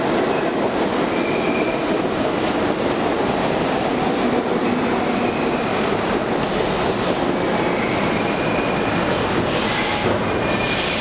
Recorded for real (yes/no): yes